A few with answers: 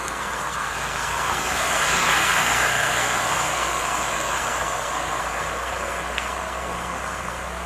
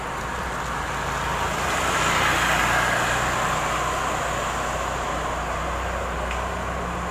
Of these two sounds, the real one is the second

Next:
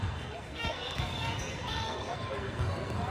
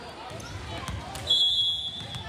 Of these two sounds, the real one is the second